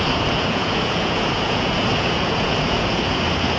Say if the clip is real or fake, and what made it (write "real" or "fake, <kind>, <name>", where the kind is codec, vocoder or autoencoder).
fake, vocoder, Vocos